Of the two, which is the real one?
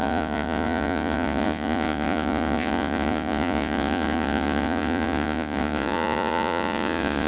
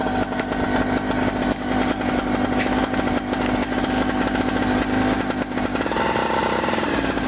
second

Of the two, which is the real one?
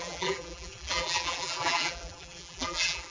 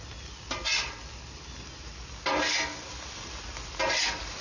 second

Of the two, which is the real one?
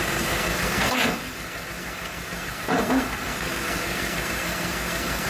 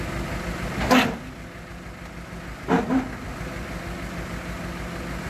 second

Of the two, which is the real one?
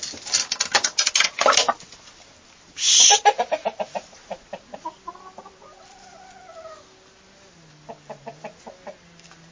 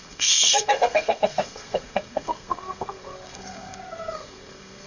first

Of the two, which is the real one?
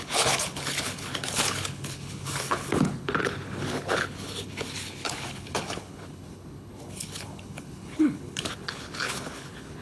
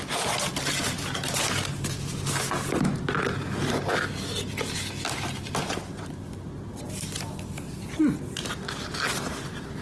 second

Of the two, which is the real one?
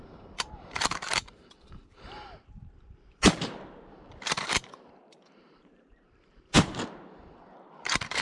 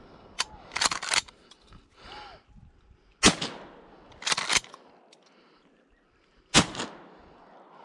second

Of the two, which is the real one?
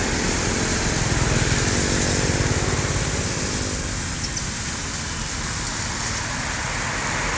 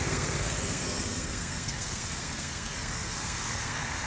first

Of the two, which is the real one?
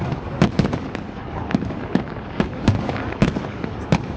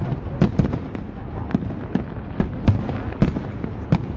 second